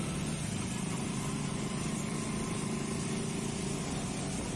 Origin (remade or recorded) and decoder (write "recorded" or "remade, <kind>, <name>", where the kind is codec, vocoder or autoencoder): recorded